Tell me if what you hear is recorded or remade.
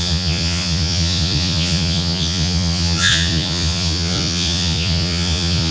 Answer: remade